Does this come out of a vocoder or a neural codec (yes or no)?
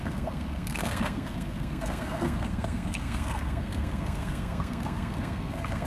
yes